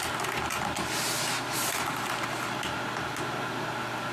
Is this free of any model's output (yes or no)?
yes